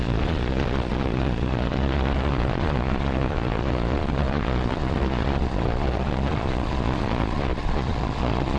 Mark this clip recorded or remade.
remade